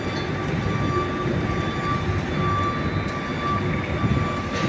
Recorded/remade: recorded